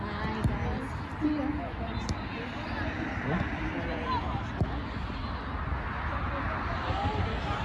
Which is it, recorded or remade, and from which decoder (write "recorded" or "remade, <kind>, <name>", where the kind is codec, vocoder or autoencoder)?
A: recorded